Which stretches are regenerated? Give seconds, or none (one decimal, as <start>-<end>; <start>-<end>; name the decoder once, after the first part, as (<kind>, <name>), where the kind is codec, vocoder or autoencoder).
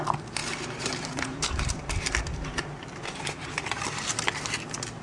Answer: 0.4-1.9 (vocoder, BigVGAN v2); 3.4-4.5